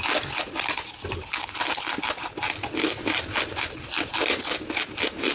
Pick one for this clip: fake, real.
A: real